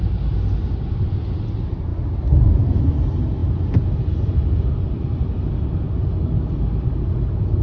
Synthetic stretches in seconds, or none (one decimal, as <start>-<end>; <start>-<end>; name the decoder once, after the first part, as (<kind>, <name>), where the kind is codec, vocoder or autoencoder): none